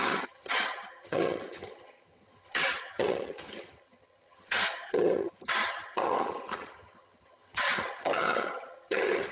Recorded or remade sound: remade